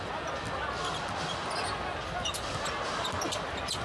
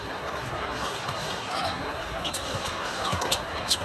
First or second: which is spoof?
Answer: second